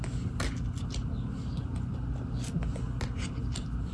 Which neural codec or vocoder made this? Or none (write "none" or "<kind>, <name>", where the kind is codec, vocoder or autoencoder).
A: none